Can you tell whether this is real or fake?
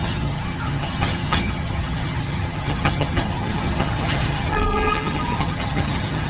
fake